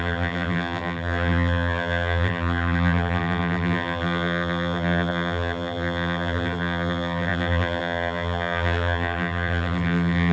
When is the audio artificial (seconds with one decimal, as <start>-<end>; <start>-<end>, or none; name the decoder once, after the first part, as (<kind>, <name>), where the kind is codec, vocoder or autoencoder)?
0.0-10.3 (vocoder, BigVGAN v2)

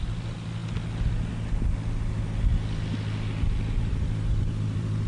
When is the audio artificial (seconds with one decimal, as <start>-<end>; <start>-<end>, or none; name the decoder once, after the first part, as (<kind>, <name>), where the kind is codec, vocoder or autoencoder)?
0.0-0.6 (vocoder, BigVGAN v2); 3.7-5.1

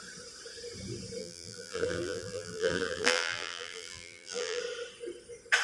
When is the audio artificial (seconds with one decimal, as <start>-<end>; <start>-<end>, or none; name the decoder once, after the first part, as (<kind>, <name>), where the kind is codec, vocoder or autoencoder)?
1.2-4.6 (vocoder, BigVGAN v2)

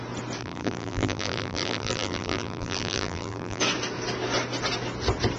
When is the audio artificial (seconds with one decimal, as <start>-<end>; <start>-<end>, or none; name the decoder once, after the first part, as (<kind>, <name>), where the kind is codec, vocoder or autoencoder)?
0.4-3.6 (vocoder, BigVGAN v2)

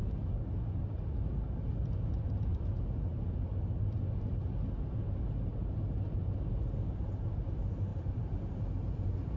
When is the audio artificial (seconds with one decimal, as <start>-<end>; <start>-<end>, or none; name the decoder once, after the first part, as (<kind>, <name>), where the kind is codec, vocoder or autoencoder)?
0.0-1.1 (vocoder, BigVGAN v2); 7.9-8.6

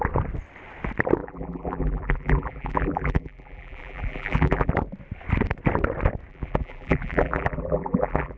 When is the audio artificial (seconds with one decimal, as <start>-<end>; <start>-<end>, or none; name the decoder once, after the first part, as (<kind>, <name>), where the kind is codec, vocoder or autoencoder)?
1.2-4.7 (vocoder, BigVGAN v2); 6.3-8.4